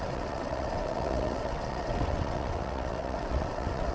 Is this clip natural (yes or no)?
no